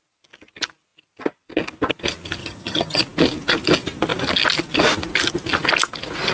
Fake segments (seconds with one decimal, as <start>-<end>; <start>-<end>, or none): 2.4-3.0